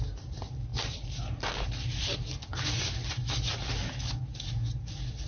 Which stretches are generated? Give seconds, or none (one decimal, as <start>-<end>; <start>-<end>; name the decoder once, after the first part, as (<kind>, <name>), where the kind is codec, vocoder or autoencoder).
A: none